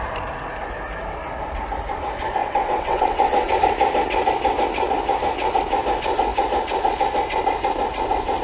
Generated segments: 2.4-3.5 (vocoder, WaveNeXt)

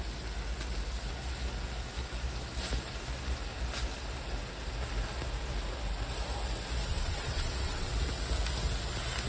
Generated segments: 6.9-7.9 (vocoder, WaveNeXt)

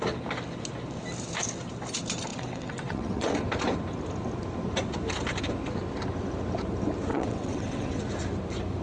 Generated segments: 2.3-3.4 (vocoder, WaveNeXt); 7.1-8.0

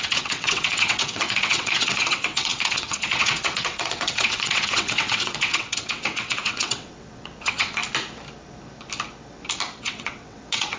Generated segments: 0.0-7.8 (vocoder, WaveNeXt); 9.8-10.8

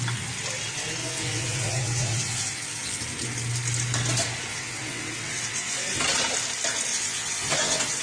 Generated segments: 1.0-3.0 (vocoder, WaveNeXt); 4.5-6.0; 6.9-8.0

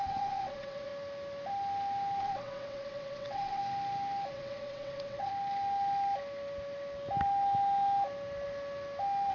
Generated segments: 0.0-0.9 (vocoder, WaveNeXt); 2.2-3.6; 4.3-5.3